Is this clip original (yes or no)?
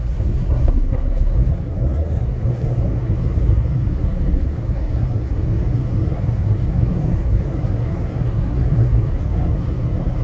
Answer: no